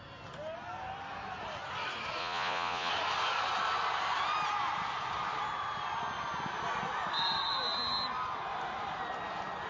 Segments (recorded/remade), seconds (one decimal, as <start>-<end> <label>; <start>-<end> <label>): 0.0-2.2 recorded; 2.2-2.9 remade; 2.9-9.7 recorded